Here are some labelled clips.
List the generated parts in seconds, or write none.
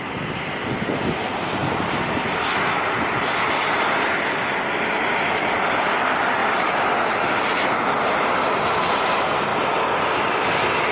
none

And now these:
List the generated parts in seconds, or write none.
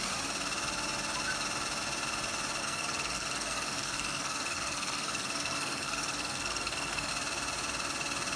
2.6-7.1 (codec, SNAC)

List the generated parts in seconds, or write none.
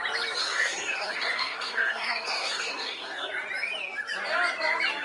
0.4-3.3 (codec, SNAC)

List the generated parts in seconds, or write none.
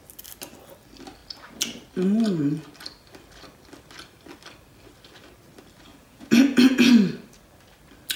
5.9-6.9 (vocoder, Vocos)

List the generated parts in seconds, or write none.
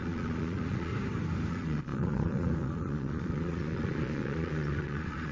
0.0-0.9 (vocoder, Vocos); 1.5-5.3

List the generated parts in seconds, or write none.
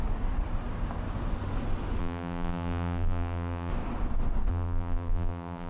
2.0-3.7 (vocoder, BigVGAN v2); 4.5-5.7